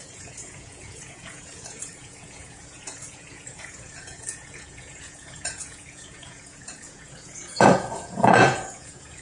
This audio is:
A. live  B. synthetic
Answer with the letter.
B